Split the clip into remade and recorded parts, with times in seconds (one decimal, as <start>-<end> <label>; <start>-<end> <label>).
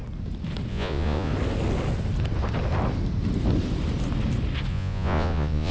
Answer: 0.0-0.7 recorded; 0.7-1.3 remade; 1.3-4.7 recorded; 4.7-5.7 remade